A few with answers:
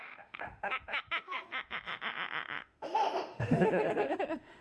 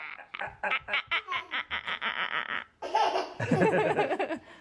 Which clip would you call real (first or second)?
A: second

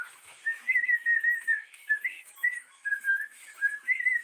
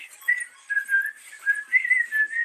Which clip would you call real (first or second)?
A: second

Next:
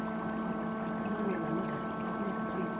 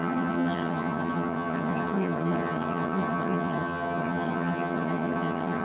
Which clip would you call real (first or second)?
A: first